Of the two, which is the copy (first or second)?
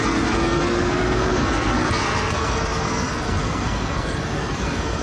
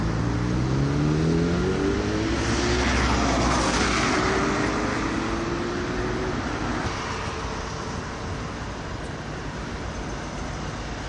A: first